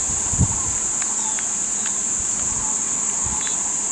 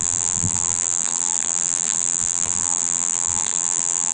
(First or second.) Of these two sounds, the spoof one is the second